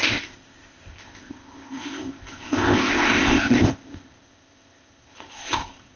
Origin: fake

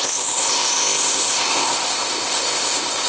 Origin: fake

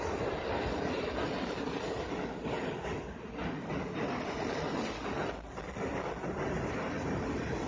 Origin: real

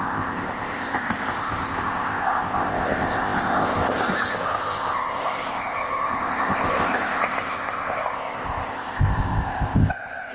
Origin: fake